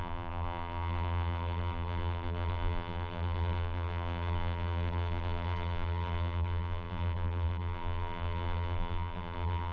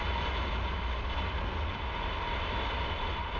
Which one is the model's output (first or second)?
first